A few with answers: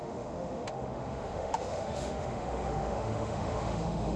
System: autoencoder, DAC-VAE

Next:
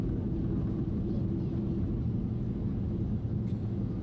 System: none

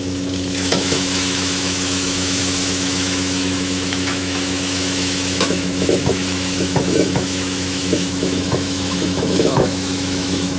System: autoencoder, DAC-VAE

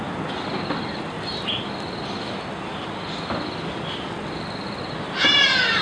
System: none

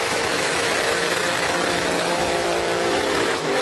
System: autoencoder, DAC-VAE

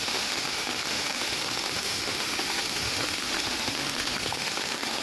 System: autoencoder, DAC-VAE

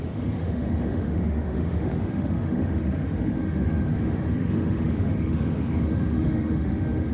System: autoencoder, DAC-VAE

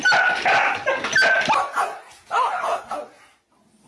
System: none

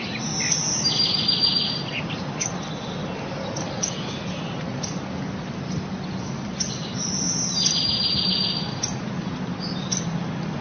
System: none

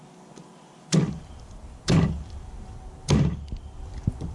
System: none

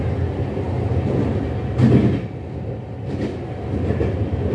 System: none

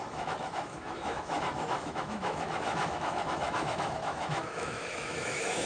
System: autoencoder, DAC-VAE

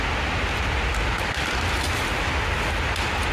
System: none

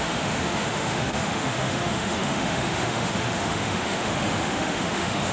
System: autoencoder, DAC-VAE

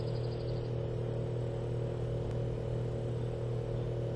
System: none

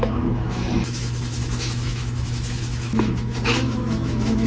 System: autoencoder, DAC-VAE